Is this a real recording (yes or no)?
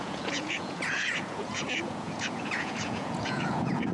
no